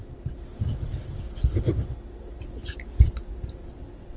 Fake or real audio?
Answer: real